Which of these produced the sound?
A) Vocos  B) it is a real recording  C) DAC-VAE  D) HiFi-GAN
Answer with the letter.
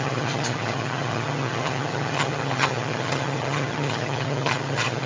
D